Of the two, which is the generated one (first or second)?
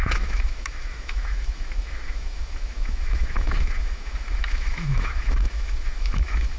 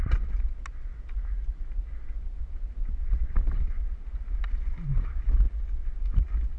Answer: first